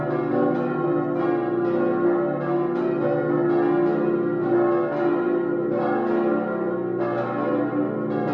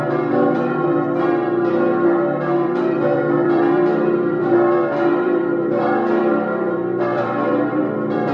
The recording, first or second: first